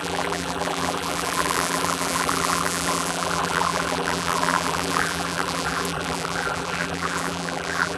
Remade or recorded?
remade